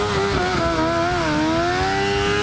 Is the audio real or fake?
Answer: real